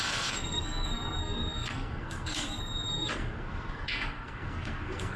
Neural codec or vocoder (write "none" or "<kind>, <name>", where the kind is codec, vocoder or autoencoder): codec, SNAC